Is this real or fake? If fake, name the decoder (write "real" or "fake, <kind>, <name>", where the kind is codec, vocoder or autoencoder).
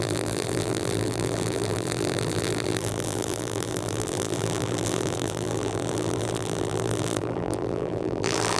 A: fake, vocoder, BigVGAN v2